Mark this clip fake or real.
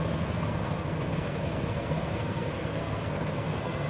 fake